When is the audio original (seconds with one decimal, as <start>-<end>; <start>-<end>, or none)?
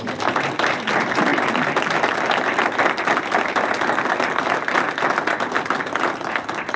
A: 0.0-6.8